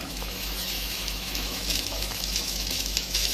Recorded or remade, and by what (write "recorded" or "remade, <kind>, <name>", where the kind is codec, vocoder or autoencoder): remade, autoencoder, DAC-VAE